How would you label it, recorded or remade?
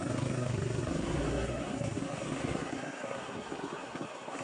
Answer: remade